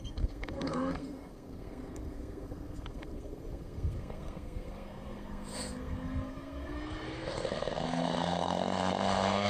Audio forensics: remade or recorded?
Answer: remade